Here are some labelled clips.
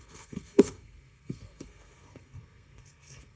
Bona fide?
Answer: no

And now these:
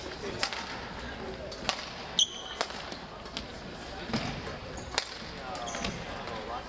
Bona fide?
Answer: yes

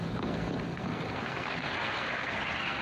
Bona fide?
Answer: no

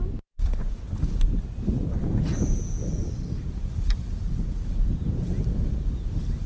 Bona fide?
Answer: yes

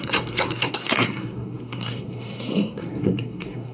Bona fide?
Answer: no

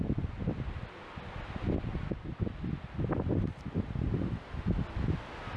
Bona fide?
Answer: yes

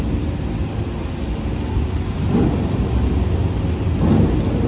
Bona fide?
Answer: yes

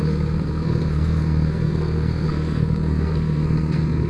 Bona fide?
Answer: no